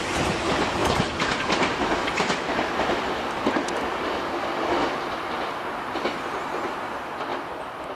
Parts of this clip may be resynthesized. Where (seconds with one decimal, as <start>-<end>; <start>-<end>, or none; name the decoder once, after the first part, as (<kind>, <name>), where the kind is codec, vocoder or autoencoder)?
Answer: 0.8-5.6 (vocoder, BigVGAN v2); 7.3-8.0